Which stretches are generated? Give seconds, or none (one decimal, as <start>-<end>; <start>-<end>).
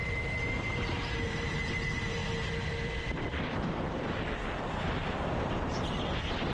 2.2-4.2